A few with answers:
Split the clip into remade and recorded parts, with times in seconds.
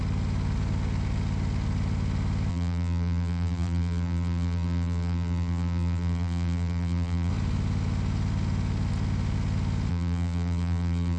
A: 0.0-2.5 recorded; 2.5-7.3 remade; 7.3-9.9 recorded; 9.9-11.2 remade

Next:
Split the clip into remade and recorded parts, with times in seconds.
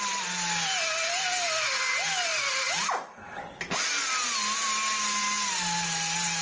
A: 0.0-6.4 recorded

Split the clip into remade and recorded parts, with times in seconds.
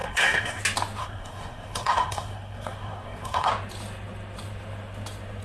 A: 0.0-0.6 remade; 0.6-1.0 recorded; 1.0-3.5 remade; 3.5-5.4 recorded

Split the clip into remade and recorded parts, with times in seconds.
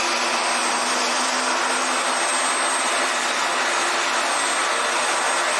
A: 0.0-5.6 recorded